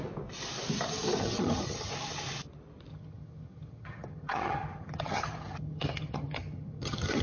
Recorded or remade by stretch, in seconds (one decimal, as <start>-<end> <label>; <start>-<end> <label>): 0.0-1.2 recorded; 1.2-1.9 remade; 1.9-2.9 recorded; 2.9-7.2 remade